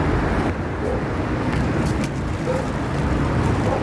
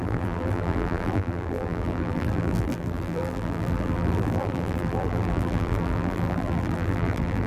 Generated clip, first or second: second